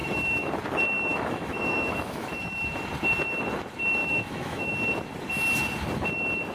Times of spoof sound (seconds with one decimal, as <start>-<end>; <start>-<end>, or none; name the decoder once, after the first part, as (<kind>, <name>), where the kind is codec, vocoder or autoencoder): 0.0-0.5 (autoencoder, DAC-VAE); 1.1-2.8; 4.0-4.7